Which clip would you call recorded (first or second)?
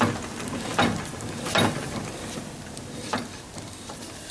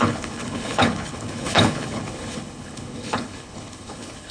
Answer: first